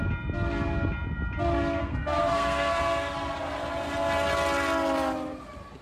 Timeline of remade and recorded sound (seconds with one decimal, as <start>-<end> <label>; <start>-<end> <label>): 0.0-1.8 recorded; 1.8-2.8 remade; 2.8-5.8 recorded